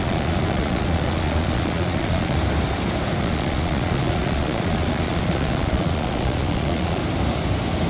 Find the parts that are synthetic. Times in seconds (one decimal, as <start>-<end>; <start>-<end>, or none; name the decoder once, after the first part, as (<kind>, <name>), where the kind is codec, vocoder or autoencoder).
0.0-2.4 (vocoder, Vocos); 3.2-7.0

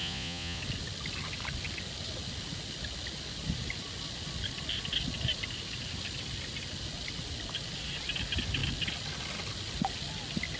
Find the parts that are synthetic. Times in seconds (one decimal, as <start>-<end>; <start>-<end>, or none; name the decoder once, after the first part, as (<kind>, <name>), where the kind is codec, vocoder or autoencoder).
0.0-0.6 (vocoder, Vocos)